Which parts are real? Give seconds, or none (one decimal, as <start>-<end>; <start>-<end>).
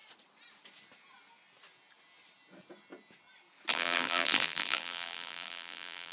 0.0-3.7